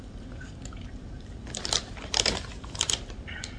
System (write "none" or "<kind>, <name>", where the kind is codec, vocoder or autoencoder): vocoder, BigVGAN v2